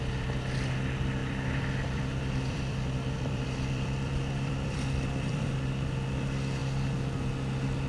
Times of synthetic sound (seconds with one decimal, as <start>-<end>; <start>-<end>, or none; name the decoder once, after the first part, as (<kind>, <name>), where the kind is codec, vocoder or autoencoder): 1.2-5.4 (vocoder, BigVGAN v2)